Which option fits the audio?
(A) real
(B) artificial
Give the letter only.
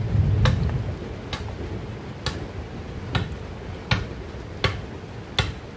A